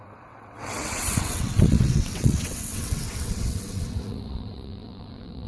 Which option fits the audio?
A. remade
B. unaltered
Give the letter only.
A